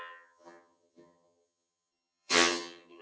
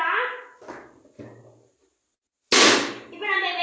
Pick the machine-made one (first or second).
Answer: first